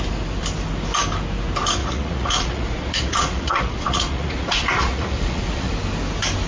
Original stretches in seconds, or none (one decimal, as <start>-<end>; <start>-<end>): 0.0-1.8; 5.7-6.5